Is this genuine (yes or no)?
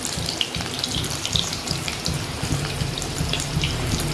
no